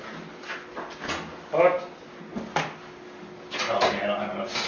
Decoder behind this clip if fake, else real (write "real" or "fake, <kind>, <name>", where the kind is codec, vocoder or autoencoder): real